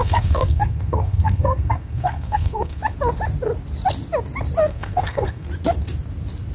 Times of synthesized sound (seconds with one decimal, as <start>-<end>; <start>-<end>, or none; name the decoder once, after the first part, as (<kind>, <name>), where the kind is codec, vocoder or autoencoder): 0.0-2.8 (codec, SNAC); 4.7-5.5